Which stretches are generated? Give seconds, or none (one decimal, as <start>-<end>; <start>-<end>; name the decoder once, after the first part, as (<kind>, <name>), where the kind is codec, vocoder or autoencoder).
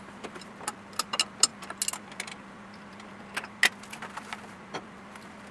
none